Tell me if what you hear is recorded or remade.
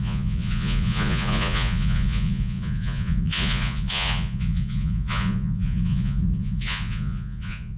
remade